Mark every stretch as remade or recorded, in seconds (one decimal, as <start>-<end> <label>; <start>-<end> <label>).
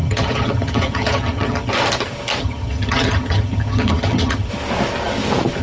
0.0-1.7 remade; 1.7-2.4 recorded; 2.4-4.5 remade; 4.5-5.6 recorded